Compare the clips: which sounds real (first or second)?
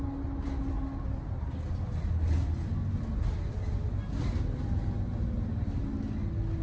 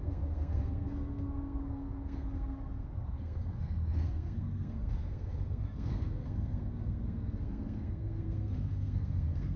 first